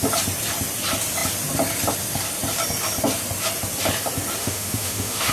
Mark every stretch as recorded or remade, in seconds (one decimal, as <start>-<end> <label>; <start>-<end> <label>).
0.0-4.4 recorded; 4.4-5.3 remade